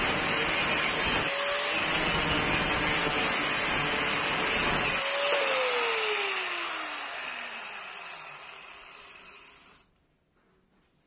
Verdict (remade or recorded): recorded